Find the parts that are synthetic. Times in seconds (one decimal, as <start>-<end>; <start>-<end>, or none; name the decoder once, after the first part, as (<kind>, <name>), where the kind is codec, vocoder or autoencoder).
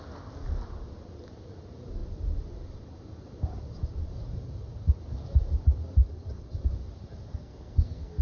7.3-8.2 (codec, SNAC)